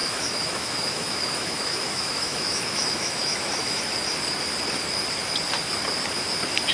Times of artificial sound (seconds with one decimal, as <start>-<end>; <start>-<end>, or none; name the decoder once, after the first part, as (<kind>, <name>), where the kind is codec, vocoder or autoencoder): 0.0-3.8 (autoencoder, DAC-VAE)